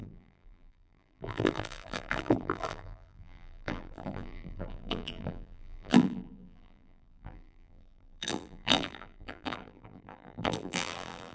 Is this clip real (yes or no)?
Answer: no